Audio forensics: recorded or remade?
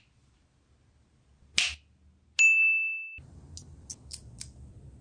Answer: recorded